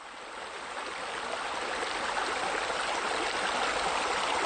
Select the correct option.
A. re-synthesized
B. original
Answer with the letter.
B